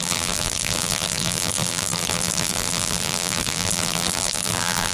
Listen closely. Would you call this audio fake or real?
fake